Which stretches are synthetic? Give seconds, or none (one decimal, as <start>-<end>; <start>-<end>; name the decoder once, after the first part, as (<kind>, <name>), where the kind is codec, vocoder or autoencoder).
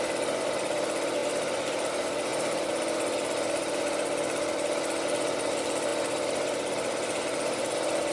none